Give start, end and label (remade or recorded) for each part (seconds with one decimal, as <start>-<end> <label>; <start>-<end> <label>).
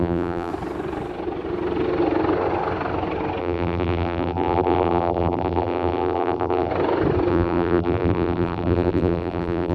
0.0-0.5 remade; 0.5-3.4 recorded; 3.4-6.7 remade; 6.7-7.3 recorded; 7.3-9.7 remade